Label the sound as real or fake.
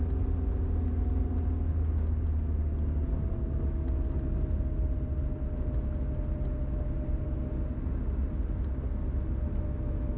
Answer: real